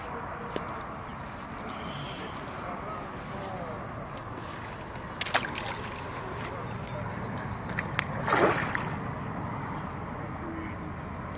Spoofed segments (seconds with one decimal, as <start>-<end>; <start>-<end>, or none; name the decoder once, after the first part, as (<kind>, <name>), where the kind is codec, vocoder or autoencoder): none